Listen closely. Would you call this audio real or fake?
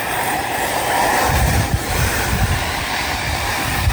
fake